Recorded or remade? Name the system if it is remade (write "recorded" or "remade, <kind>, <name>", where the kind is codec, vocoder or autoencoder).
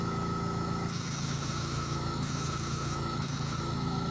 remade, autoencoder, DAC-VAE